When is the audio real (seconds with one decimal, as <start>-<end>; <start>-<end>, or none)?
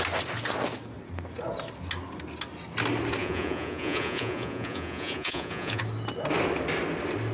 0.0-3.2; 5.8-7.3